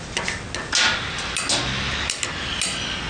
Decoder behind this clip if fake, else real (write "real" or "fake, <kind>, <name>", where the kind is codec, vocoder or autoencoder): real